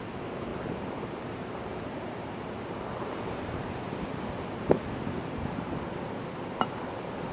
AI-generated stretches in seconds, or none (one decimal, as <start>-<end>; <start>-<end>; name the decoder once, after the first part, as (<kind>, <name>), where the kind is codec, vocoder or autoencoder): 0.5-3.8 (vocoder, BigVGAN v2)